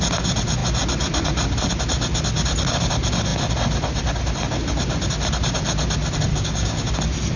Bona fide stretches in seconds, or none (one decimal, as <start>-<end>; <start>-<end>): 0.0-6.3; 6.9-7.4